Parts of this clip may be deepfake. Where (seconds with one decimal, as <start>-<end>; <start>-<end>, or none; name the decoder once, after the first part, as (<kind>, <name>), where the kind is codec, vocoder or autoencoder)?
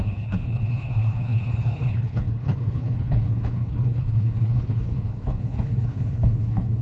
0.0-6.8 (codec, HILCodec)